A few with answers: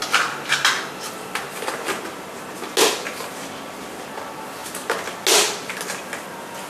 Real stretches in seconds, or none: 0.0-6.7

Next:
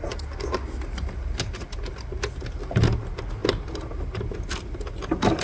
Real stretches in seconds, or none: 0.0-5.4

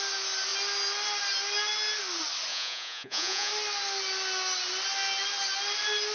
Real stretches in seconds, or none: 0.0-2.5; 3.5-6.1

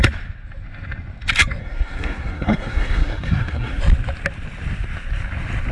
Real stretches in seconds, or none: 0.0-1.6; 3.8-5.7

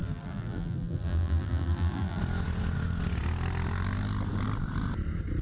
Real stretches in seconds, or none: 2.2-5.4